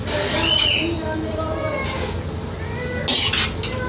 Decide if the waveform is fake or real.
real